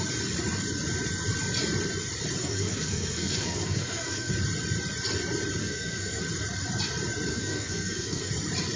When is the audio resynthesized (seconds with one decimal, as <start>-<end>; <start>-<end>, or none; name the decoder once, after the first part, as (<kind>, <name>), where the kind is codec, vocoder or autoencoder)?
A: 2.4-4.3 (codec, SNAC); 5.6-6.2; 7.3-8.3